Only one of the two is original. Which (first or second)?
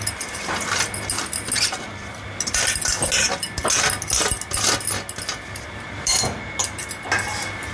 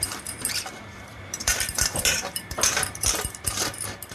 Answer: first